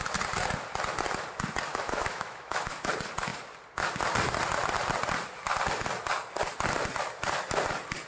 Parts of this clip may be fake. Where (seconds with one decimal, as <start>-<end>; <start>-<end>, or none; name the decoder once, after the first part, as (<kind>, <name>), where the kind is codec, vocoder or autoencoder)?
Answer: 1.7-2.9 (autoencoder, DAC-VAE)